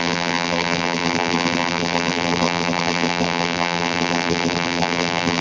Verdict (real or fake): fake